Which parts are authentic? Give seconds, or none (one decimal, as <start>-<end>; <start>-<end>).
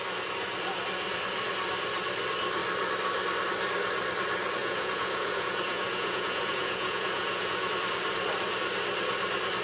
0.0-4.6; 7.7-9.6